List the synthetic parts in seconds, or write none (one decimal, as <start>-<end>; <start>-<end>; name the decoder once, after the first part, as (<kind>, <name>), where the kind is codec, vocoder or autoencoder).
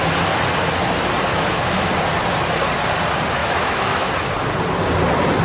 1.3-1.9 (autoencoder, DAC-VAE); 3.4-4.1